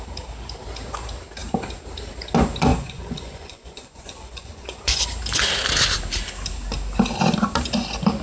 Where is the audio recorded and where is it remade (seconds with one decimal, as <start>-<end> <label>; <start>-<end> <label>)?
0.0-2.7 recorded; 2.7-5.0 remade; 5.0-8.2 recorded